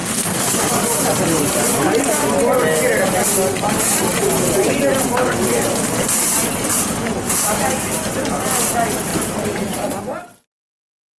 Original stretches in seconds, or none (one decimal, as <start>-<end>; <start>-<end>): 0.7-11.2